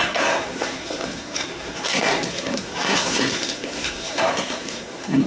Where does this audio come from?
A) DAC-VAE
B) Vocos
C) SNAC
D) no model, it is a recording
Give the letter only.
C